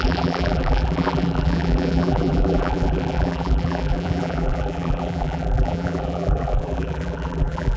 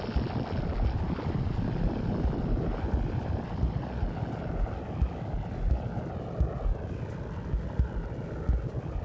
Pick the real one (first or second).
second